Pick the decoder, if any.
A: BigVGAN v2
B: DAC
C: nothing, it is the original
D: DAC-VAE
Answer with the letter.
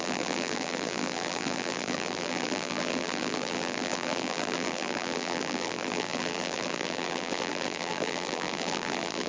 A